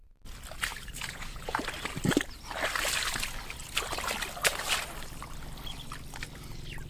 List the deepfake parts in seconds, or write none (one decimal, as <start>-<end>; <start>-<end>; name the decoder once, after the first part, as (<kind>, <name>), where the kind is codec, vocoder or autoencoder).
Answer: 0.7-1.6 (vocoder, Vocos)